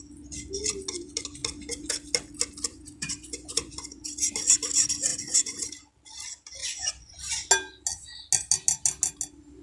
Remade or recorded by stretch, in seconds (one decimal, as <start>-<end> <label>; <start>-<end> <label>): 0.0-2.7 recorded; 2.7-4.1 remade; 4.1-5.1 recorded; 5.1-5.8 remade; 5.8-6.6 recorded; 6.6-7.5 remade; 7.5-9.6 recorded